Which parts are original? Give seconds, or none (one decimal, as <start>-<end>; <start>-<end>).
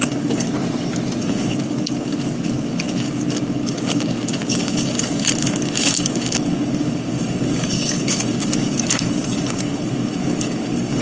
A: 0.5-1.2